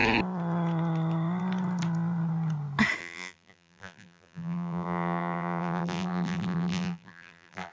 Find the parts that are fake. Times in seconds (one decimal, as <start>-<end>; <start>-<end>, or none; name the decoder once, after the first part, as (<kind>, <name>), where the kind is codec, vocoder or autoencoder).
3.0-7.7 (vocoder, BigVGAN v2)